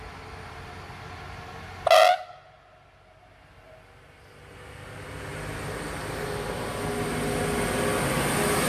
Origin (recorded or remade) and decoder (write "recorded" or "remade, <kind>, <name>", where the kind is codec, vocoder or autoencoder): recorded